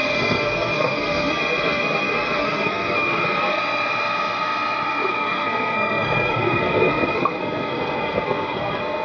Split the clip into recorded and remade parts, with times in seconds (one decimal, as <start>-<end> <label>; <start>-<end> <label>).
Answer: 0.0-3.6 remade; 3.6-5.1 recorded; 5.1-9.0 remade